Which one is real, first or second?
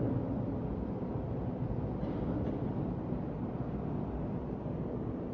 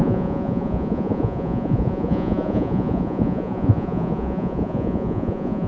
first